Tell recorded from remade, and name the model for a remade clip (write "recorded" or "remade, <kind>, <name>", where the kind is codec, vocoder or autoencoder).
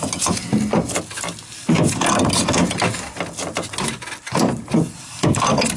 recorded